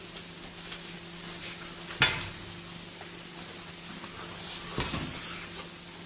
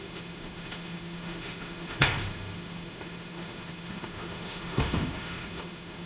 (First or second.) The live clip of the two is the first